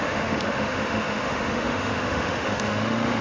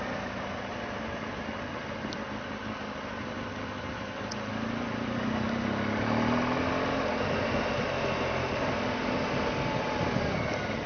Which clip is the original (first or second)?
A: second